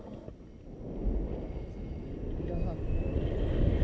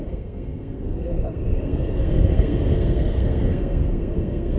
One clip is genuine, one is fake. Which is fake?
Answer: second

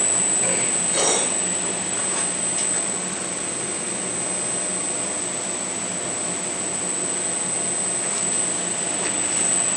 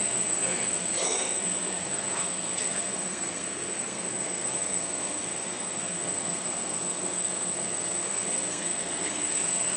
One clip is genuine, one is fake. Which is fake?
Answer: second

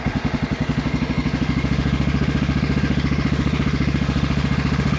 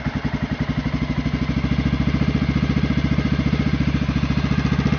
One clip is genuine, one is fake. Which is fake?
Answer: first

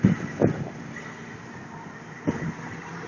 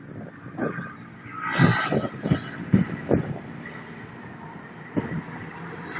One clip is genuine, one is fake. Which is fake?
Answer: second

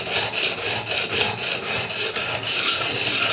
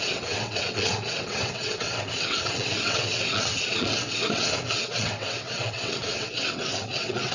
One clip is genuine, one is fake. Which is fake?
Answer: second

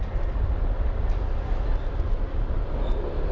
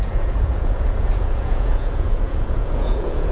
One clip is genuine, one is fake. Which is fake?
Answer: second